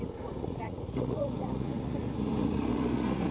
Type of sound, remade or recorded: remade